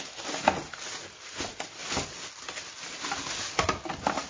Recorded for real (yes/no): yes